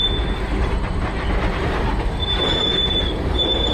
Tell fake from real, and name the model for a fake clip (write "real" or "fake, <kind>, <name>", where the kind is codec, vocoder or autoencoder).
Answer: fake, vocoder, BigVGAN v2